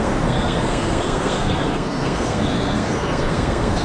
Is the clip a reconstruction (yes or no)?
yes